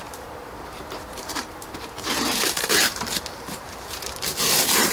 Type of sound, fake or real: fake